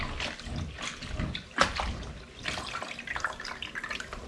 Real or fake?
real